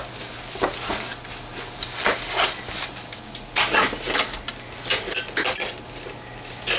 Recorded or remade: recorded